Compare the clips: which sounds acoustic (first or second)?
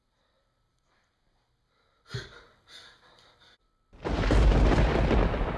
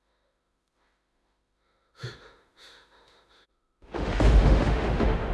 first